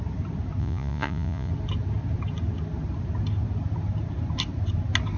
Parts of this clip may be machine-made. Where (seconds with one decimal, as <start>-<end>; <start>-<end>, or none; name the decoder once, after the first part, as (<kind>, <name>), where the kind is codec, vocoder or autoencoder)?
0.6-1.5 (vocoder, Vocos)